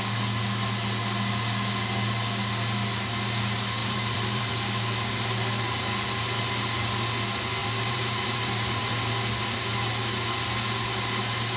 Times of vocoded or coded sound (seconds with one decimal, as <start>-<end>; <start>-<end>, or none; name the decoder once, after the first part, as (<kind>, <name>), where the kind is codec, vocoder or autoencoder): 3.8-4.5 (vocoder, BigVGAN v2); 7.6-8.9